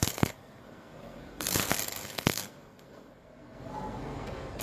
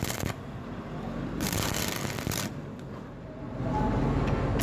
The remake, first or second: first